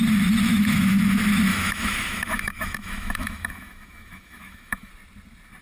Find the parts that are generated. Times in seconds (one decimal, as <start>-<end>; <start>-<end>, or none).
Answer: 0.5-1.0; 1.5-4.9